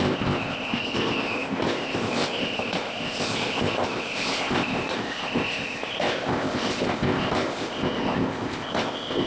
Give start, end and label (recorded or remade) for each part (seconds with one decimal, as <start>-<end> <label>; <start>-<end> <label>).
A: 0.0-9.3 remade